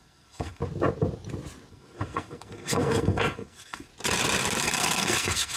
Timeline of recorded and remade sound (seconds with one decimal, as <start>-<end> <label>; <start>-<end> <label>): 0.0-0.6 remade; 0.6-1.7 recorded; 1.7-3.9 remade; 3.9-4.6 recorded; 4.6-5.6 remade